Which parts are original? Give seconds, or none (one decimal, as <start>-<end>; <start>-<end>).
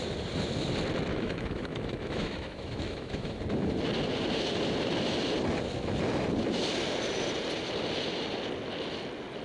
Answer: 0.0-1.1; 3.4-9.4